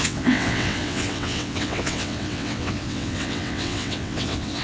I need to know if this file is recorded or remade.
remade